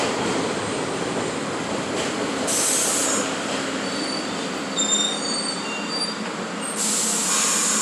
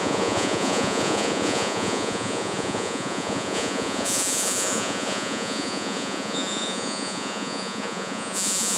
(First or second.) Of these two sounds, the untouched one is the first